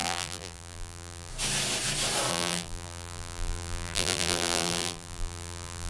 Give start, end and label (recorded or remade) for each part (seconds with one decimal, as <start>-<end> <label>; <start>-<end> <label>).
0.0-1.3 remade; 1.3-2.3 recorded; 2.3-5.9 remade